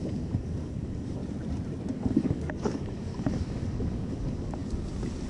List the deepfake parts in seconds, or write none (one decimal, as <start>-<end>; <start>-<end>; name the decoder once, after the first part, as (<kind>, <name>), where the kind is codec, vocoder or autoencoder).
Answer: 0.0-1.2 (codec, DAC); 1.9-4.6